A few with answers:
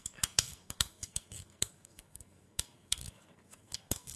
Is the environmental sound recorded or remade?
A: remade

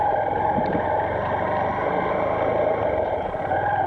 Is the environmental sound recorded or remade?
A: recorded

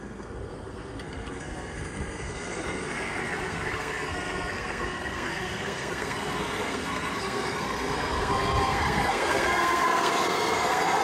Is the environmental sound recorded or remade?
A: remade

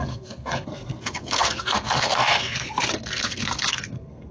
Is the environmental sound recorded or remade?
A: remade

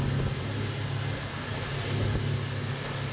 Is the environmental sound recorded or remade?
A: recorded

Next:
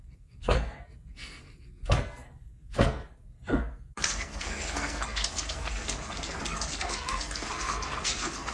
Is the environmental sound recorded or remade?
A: remade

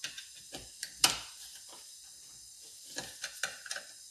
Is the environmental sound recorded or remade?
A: recorded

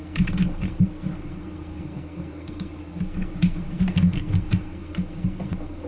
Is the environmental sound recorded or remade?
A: remade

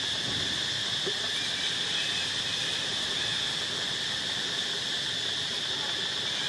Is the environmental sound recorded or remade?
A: recorded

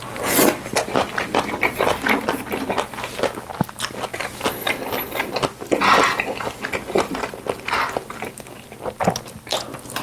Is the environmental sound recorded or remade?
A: recorded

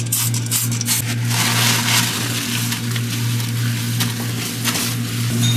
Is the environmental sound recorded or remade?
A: recorded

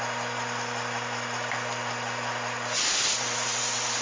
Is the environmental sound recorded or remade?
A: recorded